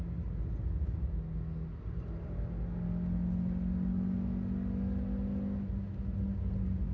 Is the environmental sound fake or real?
real